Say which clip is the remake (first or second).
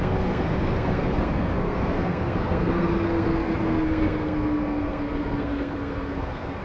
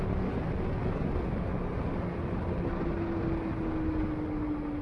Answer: first